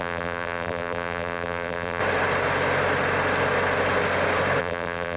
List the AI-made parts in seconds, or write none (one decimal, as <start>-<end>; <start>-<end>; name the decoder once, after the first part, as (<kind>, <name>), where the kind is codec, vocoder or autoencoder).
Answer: 0.0-2.0 (vocoder, BigVGAN v2); 4.6-5.2